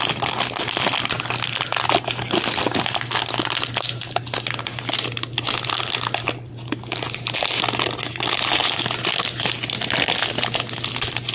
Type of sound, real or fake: real